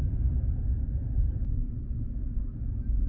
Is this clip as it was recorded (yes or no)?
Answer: no